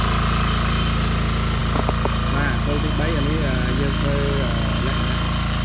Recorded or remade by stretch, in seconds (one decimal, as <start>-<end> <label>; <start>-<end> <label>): 0.0-5.6 recorded